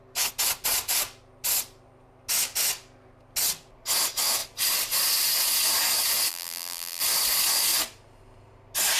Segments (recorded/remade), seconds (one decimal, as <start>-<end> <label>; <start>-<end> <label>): 0.0-6.3 recorded; 6.3-7.0 remade; 7.0-9.0 recorded